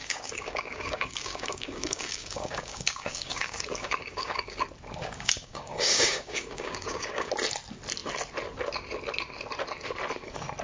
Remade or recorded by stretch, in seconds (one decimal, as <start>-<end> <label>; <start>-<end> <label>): 0.0-4.6 remade; 4.6-5.0 recorded; 5.0-7.3 remade; 7.3-10.6 recorded